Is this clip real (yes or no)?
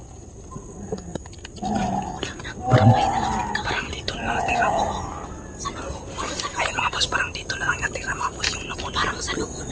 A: yes